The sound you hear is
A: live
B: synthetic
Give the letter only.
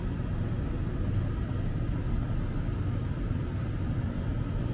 A